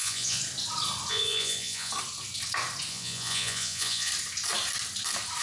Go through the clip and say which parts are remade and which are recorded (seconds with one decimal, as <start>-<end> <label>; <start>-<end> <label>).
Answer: 0.0-0.4 remade; 0.4-1.1 recorded; 1.1-1.9 remade; 1.9-2.9 recorded; 2.9-4.1 remade; 4.1-5.4 recorded